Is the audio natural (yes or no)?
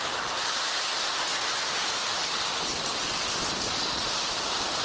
yes